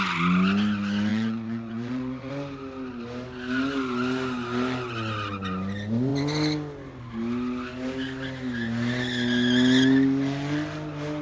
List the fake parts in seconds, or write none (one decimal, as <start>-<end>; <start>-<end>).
1.1-2.3